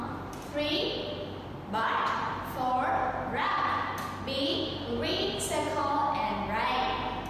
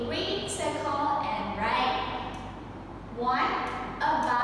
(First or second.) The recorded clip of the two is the first